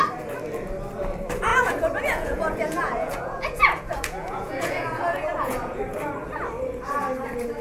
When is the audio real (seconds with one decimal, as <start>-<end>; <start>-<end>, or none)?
0.0-1.5; 5.8-7.6